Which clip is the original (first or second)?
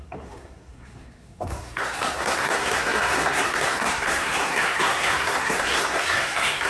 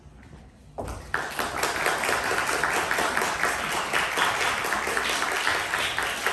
second